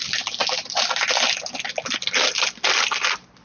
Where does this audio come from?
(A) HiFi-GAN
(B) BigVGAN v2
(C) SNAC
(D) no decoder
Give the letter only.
D